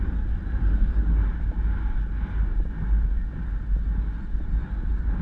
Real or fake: real